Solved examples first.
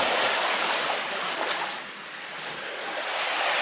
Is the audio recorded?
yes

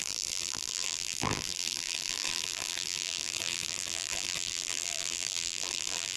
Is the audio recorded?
no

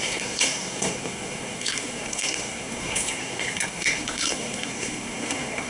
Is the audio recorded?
no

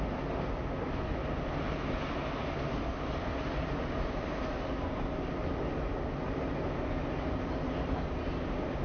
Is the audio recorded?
yes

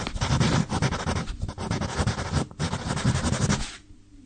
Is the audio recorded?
yes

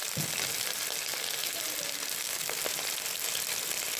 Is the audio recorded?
yes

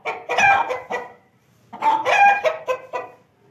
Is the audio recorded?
yes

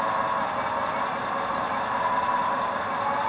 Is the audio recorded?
yes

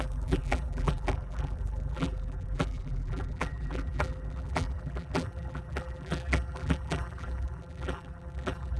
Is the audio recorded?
no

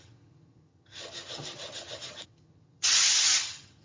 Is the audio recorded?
no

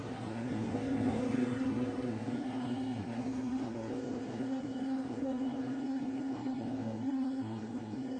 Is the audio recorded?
no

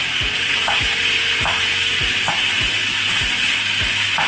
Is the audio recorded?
yes